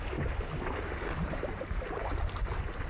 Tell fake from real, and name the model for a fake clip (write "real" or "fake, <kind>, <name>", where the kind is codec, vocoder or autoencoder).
real